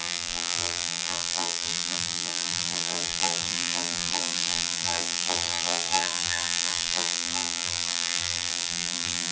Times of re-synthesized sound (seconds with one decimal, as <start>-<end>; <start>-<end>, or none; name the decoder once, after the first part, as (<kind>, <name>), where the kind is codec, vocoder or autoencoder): 0.0-9.3 (vocoder, BigVGAN v2)